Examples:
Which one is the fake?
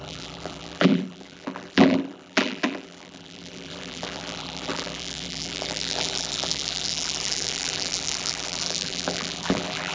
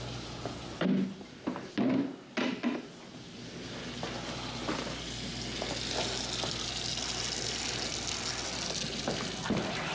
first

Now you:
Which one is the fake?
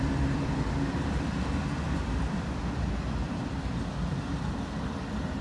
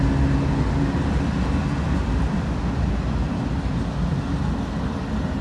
first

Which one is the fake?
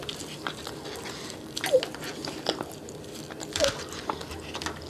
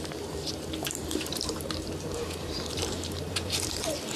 second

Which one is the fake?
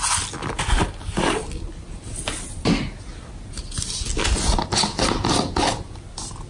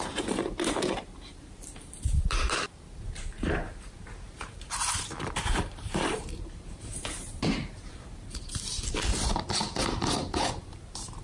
second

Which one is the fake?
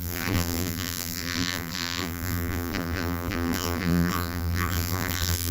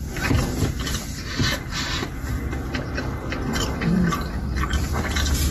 first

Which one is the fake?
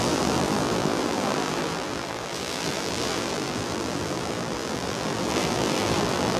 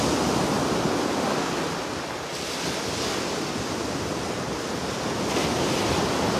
first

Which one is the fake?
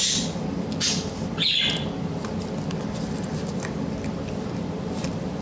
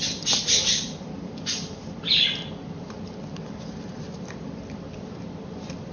second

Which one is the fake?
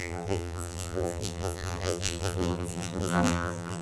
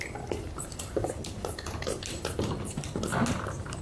first